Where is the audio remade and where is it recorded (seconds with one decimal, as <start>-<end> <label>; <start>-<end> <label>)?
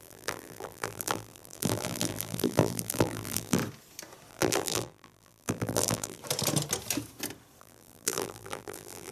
0.0-3.6 remade; 3.6-4.3 recorded; 4.3-6.2 remade; 6.2-7.6 recorded; 7.6-9.1 remade